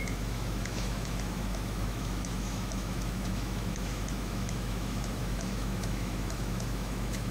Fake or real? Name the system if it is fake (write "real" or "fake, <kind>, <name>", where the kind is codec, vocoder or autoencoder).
fake, autoencoder, DAC-VAE